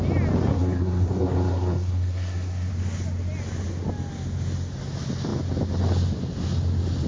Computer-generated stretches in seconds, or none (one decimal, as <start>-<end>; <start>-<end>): 0.5-2.7